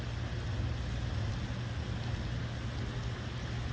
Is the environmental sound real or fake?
real